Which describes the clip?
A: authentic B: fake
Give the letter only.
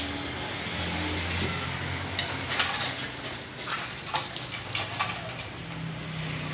A